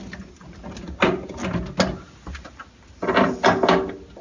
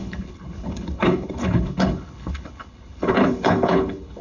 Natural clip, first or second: first